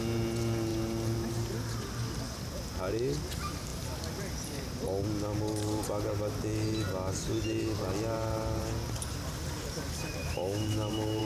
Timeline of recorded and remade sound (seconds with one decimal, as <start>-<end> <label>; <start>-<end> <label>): 0.0-10.2 recorded; 10.2-11.2 remade